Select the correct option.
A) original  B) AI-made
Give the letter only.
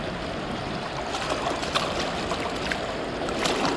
A